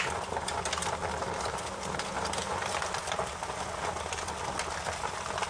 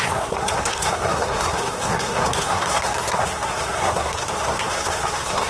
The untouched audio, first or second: first